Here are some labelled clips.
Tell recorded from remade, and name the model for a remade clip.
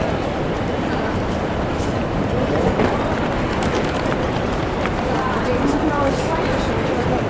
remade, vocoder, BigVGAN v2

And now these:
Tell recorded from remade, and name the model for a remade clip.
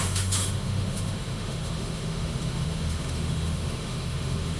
remade, autoencoder, DAC-VAE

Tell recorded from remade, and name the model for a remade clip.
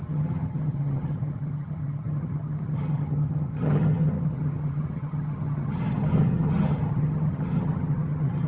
remade, vocoder, HiFi-GAN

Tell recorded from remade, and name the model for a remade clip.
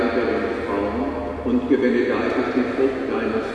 recorded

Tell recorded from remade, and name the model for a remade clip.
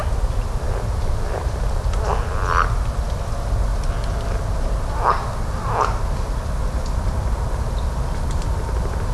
recorded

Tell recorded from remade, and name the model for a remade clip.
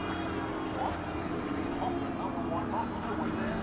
recorded